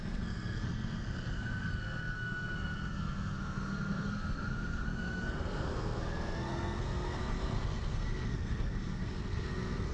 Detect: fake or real fake